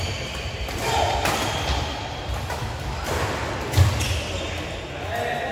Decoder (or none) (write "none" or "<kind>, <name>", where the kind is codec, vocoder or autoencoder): none